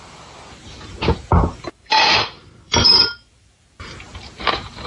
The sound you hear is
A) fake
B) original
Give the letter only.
A